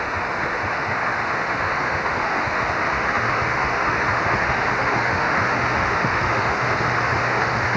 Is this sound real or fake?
fake